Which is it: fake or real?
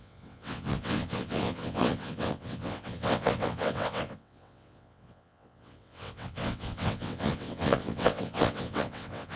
fake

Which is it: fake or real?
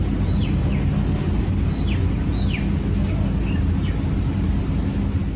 real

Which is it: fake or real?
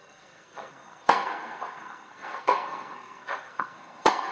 fake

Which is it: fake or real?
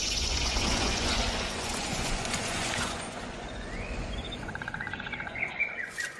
fake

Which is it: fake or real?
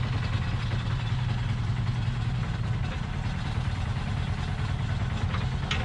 real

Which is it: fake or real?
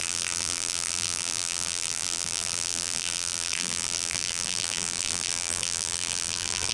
fake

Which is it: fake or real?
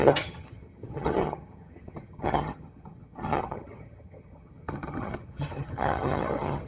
fake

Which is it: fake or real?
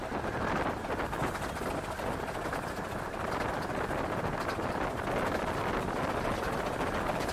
real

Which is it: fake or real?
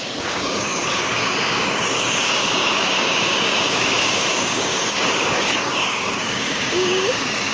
fake